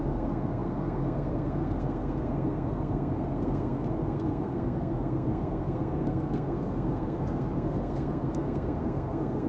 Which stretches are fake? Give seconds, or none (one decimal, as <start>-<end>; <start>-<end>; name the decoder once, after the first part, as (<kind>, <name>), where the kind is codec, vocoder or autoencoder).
0.0-9.5 (codec, SNAC)